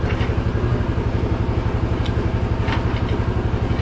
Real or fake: real